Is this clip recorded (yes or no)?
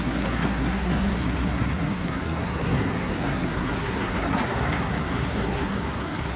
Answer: no